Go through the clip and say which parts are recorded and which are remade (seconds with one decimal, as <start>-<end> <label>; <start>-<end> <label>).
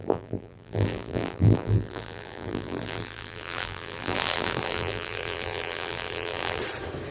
0.0-6.6 remade; 6.6-7.1 recorded